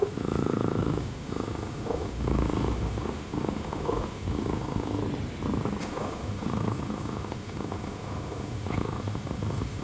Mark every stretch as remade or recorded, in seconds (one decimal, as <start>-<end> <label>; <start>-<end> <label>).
0.0-5.0 remade; 5.0-5.8 recorded; 5.8-9.8 remade